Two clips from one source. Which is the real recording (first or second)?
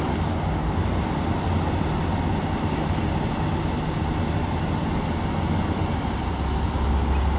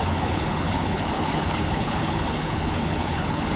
first